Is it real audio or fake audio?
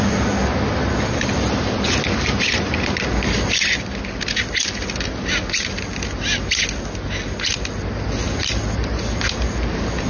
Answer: real